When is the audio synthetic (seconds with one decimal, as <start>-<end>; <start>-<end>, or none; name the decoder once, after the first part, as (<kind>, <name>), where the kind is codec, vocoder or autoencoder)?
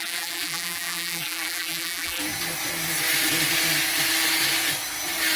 0.0-2.2 (vocoder, BigVGAN v2)